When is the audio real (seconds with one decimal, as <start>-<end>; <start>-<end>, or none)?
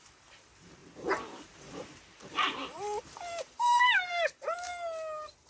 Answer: 4.7-5.5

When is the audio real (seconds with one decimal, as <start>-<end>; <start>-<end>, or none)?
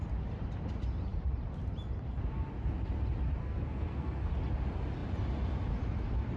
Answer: 0.0-3.4; 4.3-6.4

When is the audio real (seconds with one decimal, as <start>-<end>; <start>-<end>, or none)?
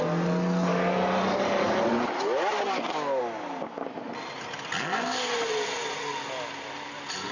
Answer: 0.0-7.3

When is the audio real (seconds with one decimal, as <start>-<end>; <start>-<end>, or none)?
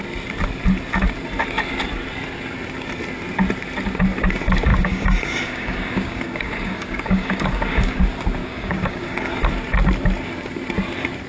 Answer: 0.0-4.7; 8.0-8.4; 9.3-11.3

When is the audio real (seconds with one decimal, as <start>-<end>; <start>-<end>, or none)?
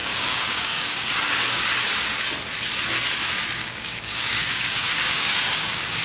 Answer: 1.1-3.6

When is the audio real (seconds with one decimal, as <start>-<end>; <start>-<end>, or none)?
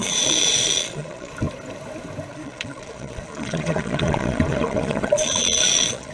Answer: 1.3-2.3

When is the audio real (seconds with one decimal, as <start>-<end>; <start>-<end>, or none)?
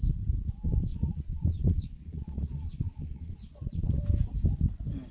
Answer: 0.0-0.9; 4.0-5.1